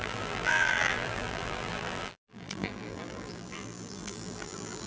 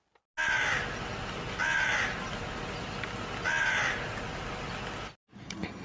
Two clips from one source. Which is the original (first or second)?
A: second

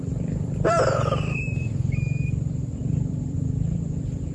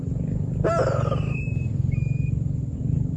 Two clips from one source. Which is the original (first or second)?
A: second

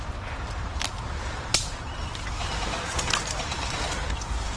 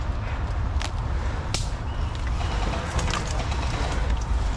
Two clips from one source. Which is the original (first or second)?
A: second